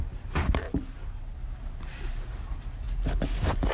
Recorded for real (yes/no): yes